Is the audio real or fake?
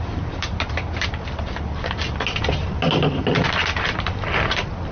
real